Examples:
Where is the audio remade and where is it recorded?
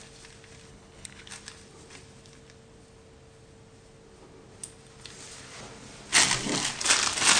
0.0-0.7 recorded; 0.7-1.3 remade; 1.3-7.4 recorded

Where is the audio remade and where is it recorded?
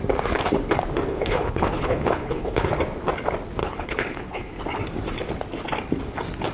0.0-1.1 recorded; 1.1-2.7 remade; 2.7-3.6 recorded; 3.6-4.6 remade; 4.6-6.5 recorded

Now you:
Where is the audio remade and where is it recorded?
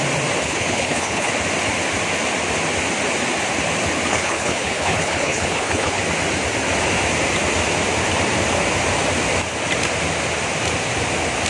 0.0-0.4 recorded; 0.4-1.3 remade; 1.3-4.1 recorded; 4.1-6.0 remade; 6.0-11.5 recorded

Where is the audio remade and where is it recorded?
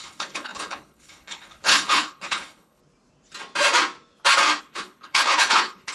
0.0-2.8 remade; 2.8-4.6 recorded; 4.6-5.9 remade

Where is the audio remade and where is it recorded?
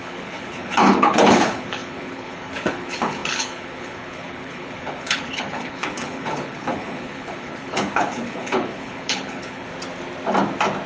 0.0-9.7 remade; 9.7-10.9 recorded